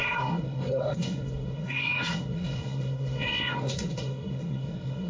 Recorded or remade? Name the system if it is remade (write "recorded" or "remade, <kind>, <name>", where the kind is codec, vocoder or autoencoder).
remade, codec, SNAC